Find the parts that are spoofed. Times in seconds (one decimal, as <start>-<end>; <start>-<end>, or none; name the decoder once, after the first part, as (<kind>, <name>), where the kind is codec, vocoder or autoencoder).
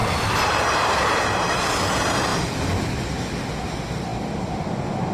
0.0-1.6 (vocoder, BigVGAN v2)